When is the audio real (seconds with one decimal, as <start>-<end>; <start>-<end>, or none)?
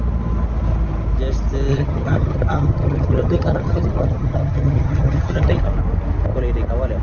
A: 0.0-1.7; 5.6-7.0